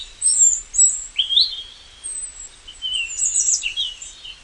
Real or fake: fake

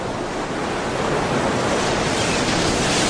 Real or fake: real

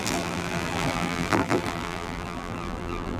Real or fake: fake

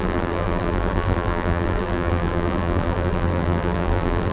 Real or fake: fake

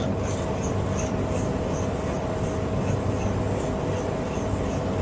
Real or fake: real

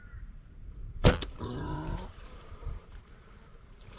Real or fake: fake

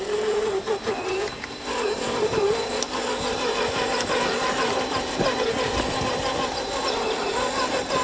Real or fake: fake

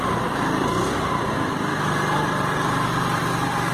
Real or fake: real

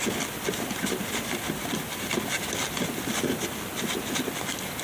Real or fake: real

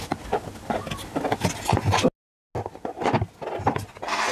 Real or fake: real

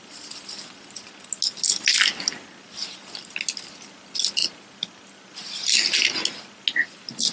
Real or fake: real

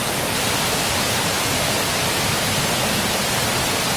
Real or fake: real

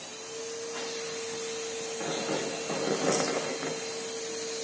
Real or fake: real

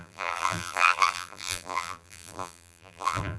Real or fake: fake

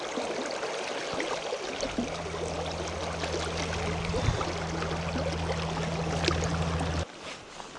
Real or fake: real